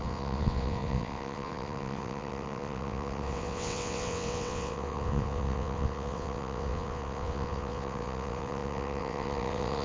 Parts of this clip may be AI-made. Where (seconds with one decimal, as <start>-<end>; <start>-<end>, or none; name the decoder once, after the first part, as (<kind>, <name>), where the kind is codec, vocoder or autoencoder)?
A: 0.0-9.8 (vocoder, WaveNeXt)